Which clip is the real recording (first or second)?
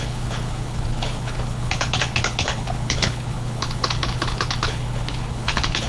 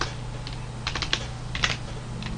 second